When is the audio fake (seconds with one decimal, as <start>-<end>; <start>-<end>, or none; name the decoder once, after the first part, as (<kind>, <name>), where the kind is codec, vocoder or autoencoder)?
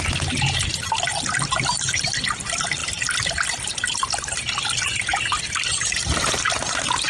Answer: none